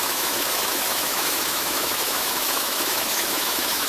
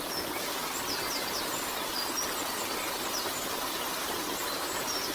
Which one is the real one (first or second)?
second